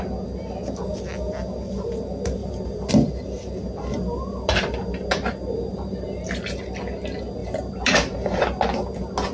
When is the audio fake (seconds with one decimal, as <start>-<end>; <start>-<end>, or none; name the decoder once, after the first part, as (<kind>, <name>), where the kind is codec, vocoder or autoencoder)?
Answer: 2.4-2.9 (vocoder, BigVGAN v2); 5.7-6.4; 7.4-8.4